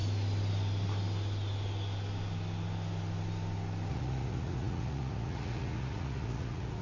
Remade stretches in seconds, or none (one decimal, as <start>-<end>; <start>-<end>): 3.9-6.8